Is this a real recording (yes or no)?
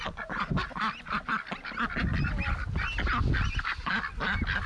yes